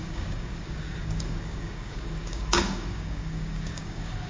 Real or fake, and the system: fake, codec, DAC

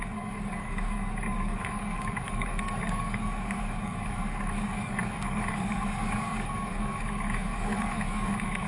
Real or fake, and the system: fake, codec, DAC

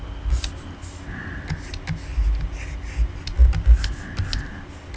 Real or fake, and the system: real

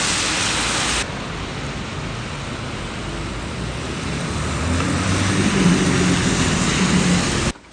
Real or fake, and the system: real